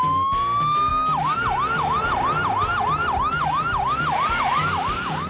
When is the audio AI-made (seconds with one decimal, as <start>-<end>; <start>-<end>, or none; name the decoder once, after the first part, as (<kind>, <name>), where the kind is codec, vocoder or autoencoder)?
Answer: none